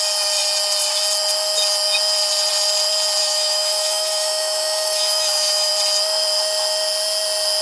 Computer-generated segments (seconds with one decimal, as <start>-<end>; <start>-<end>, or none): 3.2-5.7